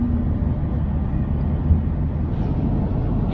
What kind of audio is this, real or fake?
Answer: real